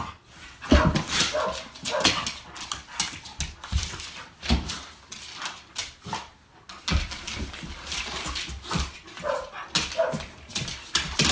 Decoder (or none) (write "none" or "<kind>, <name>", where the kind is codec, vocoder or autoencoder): none